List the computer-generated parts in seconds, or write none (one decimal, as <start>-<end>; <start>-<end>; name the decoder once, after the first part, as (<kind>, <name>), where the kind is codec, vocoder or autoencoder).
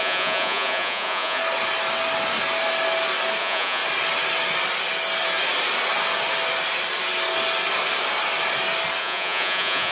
0.0-1.4 (vocoder, Vocos); 3.4-3.8; 9.0-9.9